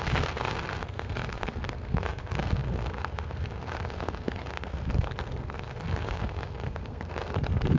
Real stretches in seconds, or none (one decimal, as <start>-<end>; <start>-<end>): none